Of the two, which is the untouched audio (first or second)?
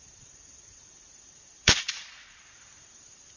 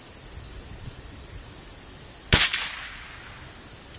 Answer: second